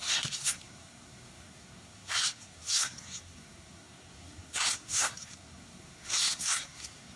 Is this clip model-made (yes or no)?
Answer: yes